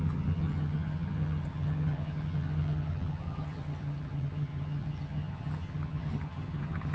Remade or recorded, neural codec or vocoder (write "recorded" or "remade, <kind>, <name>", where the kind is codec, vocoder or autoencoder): remade, vocoder, HiFi-GAN